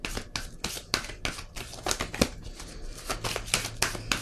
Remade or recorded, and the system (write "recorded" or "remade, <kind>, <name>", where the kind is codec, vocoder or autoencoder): recorded